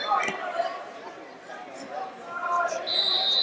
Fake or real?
fake